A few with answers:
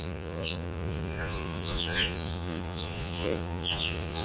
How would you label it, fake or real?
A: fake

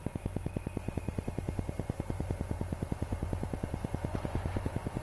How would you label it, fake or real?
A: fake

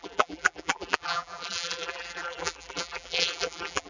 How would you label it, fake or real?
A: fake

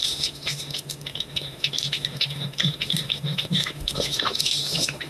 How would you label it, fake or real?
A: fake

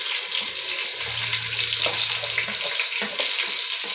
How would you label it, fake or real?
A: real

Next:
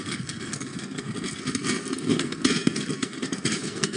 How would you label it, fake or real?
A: fake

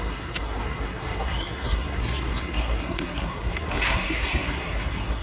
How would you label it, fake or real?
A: fake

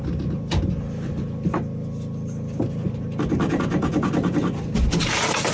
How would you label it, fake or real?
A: real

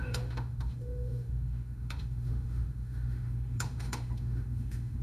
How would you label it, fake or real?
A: fake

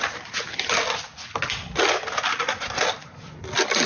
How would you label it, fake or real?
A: real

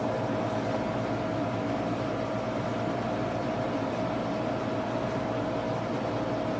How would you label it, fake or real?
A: real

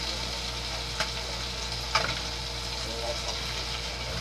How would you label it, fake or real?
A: real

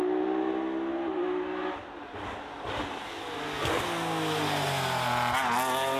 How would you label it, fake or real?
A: real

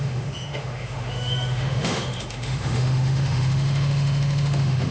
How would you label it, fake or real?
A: fake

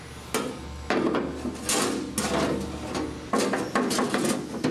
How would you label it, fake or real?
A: real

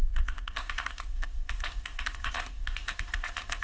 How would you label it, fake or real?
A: fake